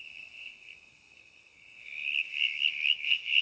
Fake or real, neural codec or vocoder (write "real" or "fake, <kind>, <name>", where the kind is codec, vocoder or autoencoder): fake, codec, SNAC